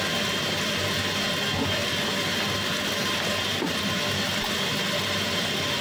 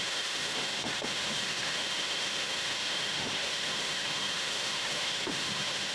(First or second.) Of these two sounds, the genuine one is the first